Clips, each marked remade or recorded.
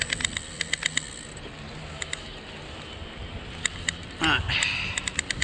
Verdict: recorded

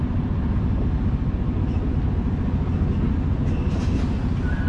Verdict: recorded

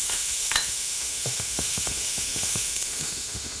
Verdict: remade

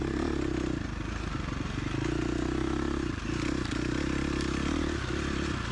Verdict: recorded